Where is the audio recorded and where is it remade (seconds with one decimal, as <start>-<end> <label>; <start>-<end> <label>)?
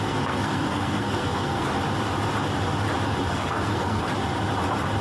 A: 0.0-1.7 remade; 1.7-3.3 recorded; 3.3-4.1 remade; 4.1-5.0 recorded